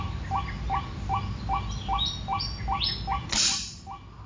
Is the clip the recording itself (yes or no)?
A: yes